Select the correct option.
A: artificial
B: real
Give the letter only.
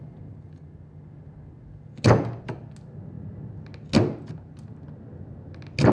B